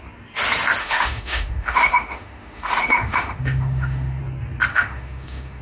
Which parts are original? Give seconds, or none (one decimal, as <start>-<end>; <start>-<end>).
0.0-0.8; 4.2-4.7